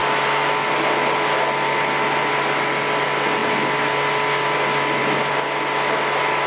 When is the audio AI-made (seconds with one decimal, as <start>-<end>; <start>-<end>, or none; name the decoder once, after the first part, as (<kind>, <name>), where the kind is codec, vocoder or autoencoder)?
none